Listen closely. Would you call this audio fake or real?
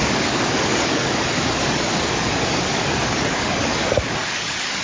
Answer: fake